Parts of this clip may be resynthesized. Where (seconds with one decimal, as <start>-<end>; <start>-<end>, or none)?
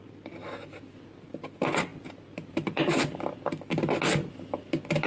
1.9-3.0